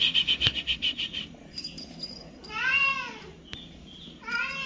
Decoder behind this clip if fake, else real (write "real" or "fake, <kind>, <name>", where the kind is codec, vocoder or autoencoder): real